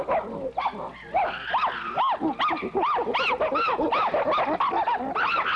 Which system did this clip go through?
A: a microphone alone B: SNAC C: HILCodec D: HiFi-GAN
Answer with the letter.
A